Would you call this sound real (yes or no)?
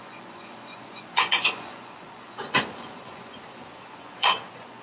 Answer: no